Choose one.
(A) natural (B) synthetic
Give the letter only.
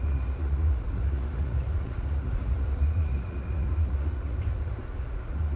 B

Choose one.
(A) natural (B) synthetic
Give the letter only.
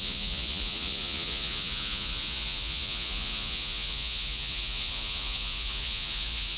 B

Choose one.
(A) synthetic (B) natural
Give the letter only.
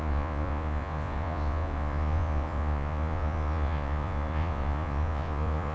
A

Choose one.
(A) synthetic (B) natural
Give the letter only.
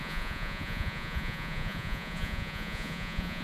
A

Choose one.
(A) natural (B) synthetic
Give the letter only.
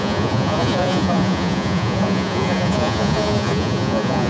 B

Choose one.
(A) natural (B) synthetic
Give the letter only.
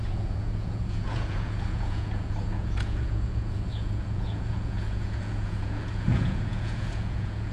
B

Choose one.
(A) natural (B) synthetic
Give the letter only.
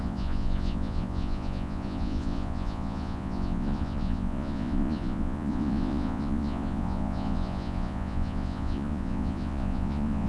B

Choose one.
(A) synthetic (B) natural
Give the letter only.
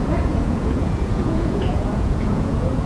A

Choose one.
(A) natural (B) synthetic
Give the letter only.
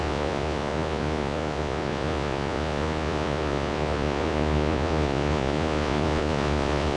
B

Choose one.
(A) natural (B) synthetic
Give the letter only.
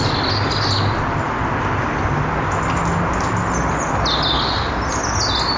A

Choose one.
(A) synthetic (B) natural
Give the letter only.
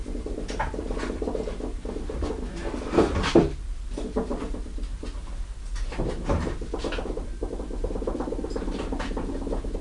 B